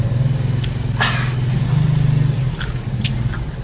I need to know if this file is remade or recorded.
recorded